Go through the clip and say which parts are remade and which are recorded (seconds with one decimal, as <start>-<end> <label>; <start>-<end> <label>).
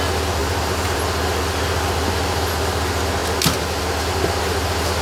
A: 0.0-0.4 recorded; 0.4-1.0 remade; 1.0-5.0 recorded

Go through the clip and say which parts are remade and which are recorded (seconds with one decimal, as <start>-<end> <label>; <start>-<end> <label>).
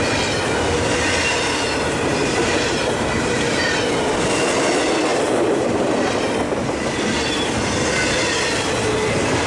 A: 0.0-2.1 recorded; 2.1-3.7 remade; 3.7-5.1 recorded; 5.1-5.9 remade; 5.9-9.5 recorded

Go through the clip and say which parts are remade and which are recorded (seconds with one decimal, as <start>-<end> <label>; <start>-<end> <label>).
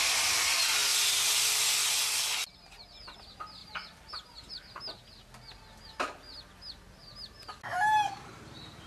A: 0.0-3.6 recorded; 3.6-4.5 remade; 4.5-7.7 recorded; 7.7-8.9 remade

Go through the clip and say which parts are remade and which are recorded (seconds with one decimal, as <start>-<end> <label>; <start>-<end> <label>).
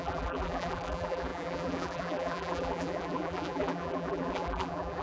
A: 0.0-5.0 remade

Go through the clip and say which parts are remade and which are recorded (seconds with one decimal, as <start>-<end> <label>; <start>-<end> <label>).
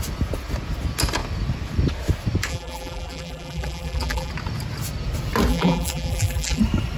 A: 0.0-2.5 recorded; 2.5-4.3 remade; 4.3-5.5 recorded; 5.5-6.6 remade; 6.6-7.0 recorded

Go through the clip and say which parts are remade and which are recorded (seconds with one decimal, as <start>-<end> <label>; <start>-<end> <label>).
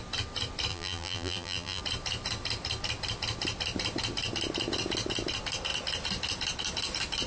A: 0.0-0.7 recorded; 0.7-1.8 remade; 1.8-7.3 recorded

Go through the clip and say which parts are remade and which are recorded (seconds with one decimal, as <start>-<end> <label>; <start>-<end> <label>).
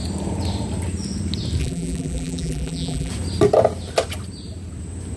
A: 0.0-1.6 recorded; 1.6-3.1 remade; 3.1-5.2 recorded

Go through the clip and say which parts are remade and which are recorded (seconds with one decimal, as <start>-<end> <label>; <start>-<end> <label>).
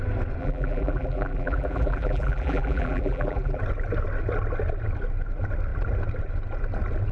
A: 0.0-0.4 recorded; 0.4-3.6 remade; 3.6-7.1 recorded